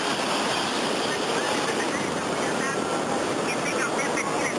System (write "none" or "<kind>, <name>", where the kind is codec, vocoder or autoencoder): none